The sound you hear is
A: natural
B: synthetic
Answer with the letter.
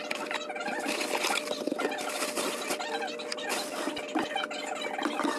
A